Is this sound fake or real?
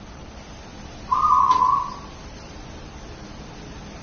real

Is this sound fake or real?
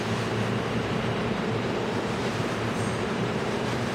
fake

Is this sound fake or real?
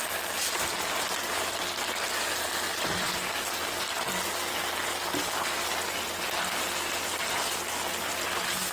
real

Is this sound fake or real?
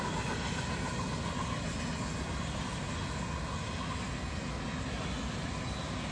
real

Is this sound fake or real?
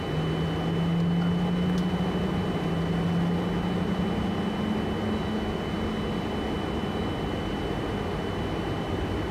real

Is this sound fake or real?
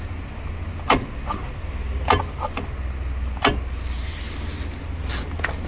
real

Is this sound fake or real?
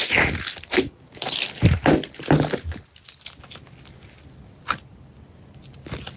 real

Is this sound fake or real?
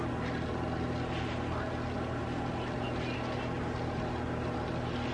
real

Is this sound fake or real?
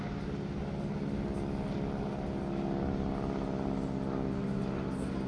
real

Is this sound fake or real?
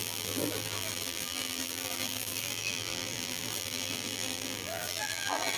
fake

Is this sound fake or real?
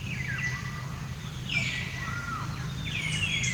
real